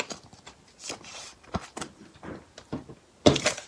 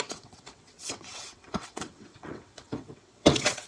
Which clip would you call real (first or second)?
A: first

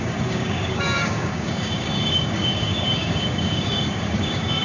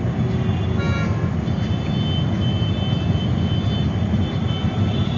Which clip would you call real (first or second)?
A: second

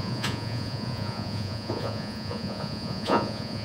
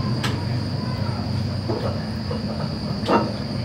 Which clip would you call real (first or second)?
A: second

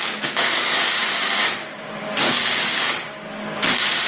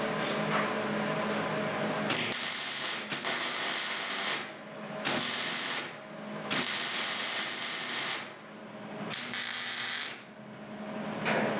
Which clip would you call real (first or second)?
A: second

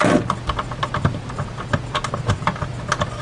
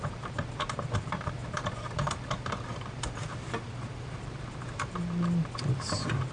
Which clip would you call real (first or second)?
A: first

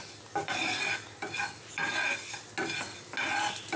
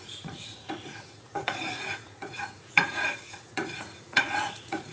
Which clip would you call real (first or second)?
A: first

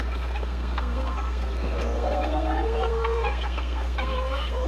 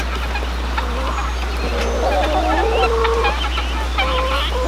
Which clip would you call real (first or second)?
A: second